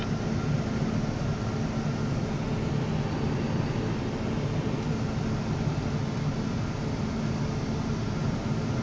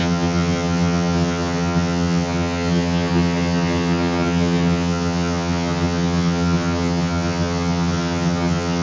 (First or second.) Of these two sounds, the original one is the first